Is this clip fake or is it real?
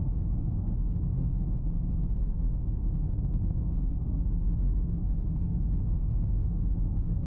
fake